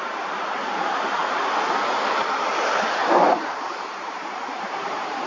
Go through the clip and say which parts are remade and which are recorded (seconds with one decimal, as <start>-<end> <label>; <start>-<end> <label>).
0.0-3.0 recorded; 3.0-5.3 remade